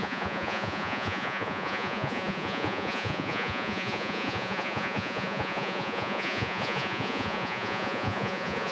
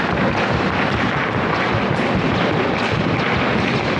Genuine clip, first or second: second